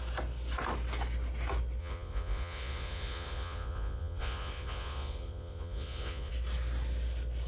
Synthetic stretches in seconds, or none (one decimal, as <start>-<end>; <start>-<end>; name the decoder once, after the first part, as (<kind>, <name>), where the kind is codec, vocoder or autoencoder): 1.8-6.3 (vocoder, Vocos)

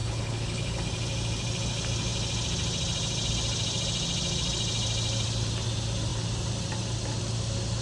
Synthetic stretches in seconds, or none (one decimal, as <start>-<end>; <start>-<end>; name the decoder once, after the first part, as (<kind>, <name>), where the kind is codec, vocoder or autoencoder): 0.0-0.8 (codec, HILCodec)